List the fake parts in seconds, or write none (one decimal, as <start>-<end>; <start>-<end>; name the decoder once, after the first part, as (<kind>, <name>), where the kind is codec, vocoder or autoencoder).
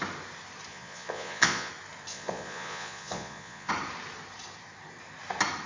0.7-1.7 (vocoder, Vocos); 2.1-3.7